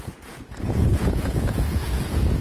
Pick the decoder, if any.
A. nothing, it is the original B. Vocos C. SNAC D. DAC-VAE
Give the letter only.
B